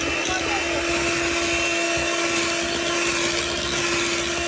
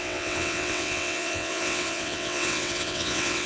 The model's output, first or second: second